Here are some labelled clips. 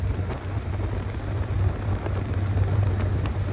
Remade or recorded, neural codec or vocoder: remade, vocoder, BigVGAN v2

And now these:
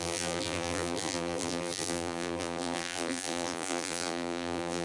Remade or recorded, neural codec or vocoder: remade, vocoder, BigVGAN v2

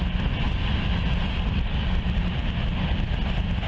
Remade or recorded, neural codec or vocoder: recorded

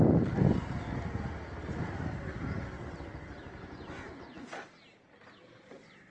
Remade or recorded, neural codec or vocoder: recorded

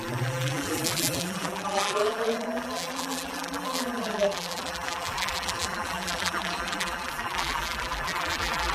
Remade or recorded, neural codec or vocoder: remade, vocoder, BigVGAN v2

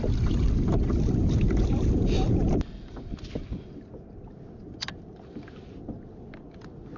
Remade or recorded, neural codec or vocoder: recorded